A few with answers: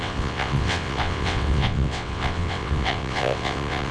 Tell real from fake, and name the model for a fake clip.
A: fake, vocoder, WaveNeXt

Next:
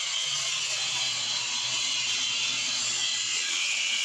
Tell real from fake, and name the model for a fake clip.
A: fake, vocoder, WaveNeXt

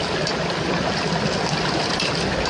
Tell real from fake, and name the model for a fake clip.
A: real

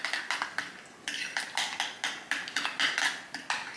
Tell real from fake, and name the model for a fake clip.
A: real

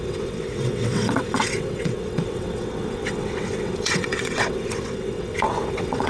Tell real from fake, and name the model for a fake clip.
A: fake, vocoder, WaveNeXt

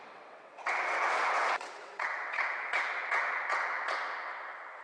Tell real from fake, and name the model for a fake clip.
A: fake, vocoder, WaveNeXt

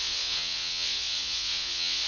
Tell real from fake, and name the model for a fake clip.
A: fake, vocoder, WaveNeXt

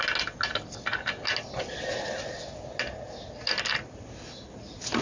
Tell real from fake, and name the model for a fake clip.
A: real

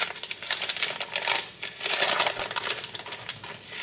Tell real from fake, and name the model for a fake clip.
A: real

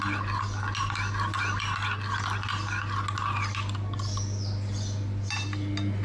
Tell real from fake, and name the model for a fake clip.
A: real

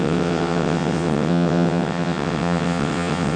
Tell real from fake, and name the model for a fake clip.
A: fake, vocoder, WaveNeXt